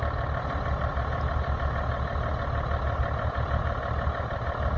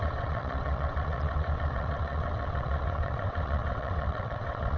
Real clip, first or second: first